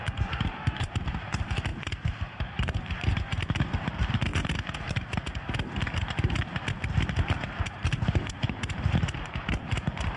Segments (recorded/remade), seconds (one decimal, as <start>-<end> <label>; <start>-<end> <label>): 0.0-4.3 remade; 4.3-7.6 recorded; 7.6-10.2 remade